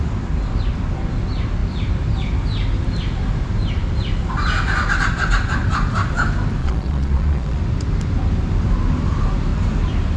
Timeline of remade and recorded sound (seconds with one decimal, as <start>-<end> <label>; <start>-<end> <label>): 0.0-6.6 recorded; 6.6-7.6 remade; 7.6-10.2 recorded